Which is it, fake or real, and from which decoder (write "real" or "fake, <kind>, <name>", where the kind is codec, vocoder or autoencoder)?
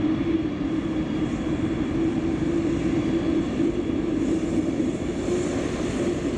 fake, vocoder, BigVGAN v2